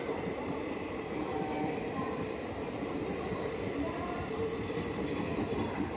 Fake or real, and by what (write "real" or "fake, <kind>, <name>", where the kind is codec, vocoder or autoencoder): fake, vocoder, BigVGAN v2